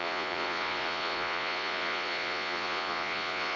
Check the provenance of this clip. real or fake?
fake